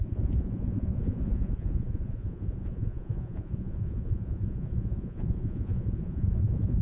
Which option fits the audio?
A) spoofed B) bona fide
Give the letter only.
A